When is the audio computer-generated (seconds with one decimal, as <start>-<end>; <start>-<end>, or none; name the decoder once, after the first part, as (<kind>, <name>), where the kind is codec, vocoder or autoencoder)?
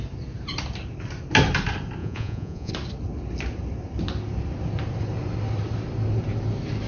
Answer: 2.0-2.7 (vocoder, Vocos)